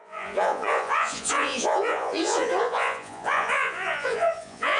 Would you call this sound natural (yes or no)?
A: no